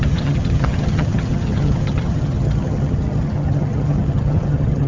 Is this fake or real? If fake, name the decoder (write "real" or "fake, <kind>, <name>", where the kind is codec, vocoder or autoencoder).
fake, vocoder, HiFi-GAN